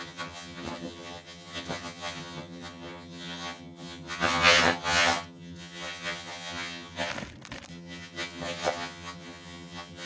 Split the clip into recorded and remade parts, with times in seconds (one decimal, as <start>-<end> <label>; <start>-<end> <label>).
0.0-7.1 remade; 7.1-7.7 recorded; 7.7-10.1 remade